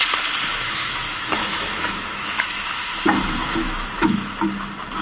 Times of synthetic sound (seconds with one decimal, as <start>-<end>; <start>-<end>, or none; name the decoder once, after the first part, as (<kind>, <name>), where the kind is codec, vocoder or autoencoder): 0.5-2.8 (autoencoder, DAC-VAE); 3.6-4.3